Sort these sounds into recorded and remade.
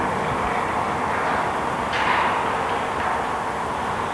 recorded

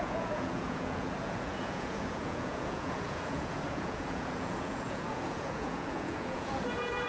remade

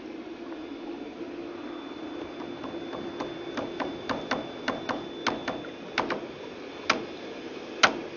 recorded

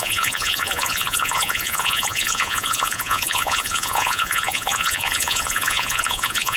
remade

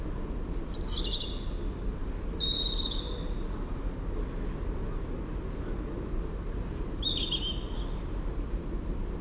recorded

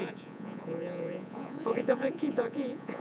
remade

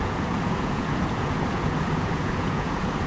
remade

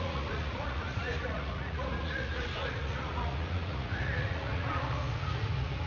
remade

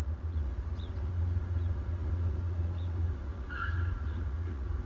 remade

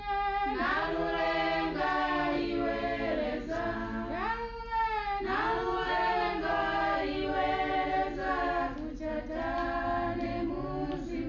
recorded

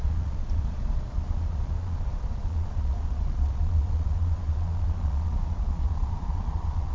remade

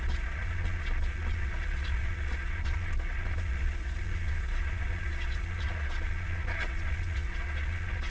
remade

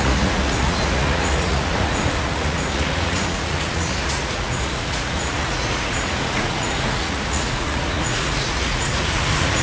remade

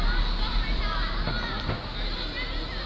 recorded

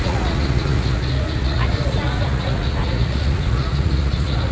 remade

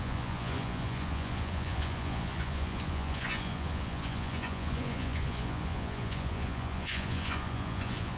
remade